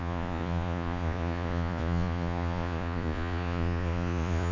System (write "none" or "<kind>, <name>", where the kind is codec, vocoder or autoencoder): vocoder, Vocos